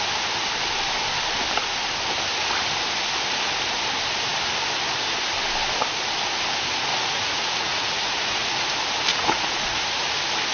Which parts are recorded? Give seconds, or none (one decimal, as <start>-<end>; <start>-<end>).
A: 0.0-6.9; 8.5-9.1; 9.8-10.5